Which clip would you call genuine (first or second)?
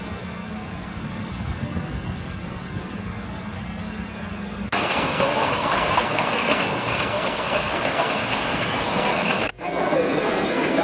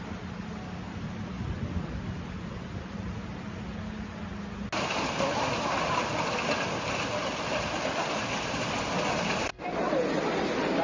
second